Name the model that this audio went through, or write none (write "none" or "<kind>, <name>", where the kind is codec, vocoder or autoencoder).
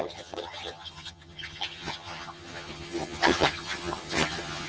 vocoder, HiFi-GAN